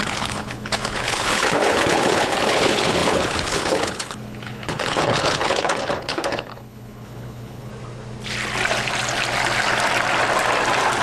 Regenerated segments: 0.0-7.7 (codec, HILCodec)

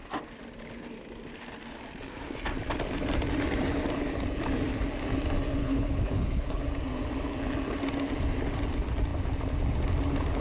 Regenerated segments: 5.6-6.6 (codec, HILCodec)

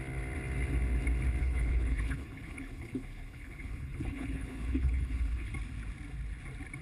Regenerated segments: 1.4-5.5 (codec, HILCodec)

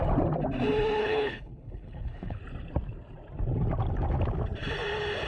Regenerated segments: 1.0-2.4 (codec, HILCodec)

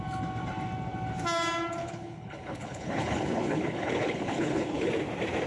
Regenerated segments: 1.8-4.9 (codec, HILCodec)

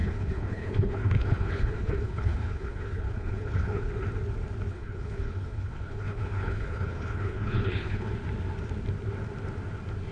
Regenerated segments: 0.0-3.9 (codec, HILCodec); 4.7-8.1

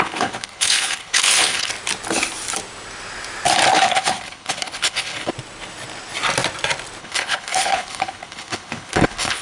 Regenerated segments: 0.0-1.7 (codec, HILCodec); 3.7-5.3; 7.0-9.4

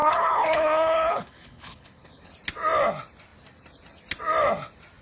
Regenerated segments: 0.0-2.3 (codec, HILCodec)